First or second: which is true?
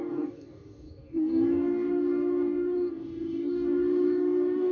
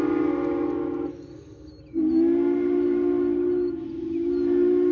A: second